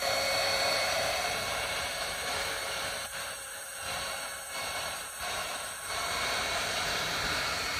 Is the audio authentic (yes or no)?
no